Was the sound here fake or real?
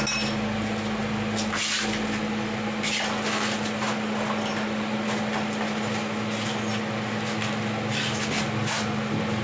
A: real